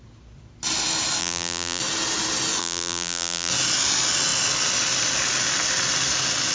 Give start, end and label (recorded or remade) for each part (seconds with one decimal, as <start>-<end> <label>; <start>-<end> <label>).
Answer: 0.0-1.2 recorded; 1.2-1.8 remade; 1.8-2.6 recorded; 2.6-3.5 remade; 3.5-6.5 recorded